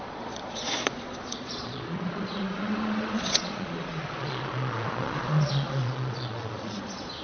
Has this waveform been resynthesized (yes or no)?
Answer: yes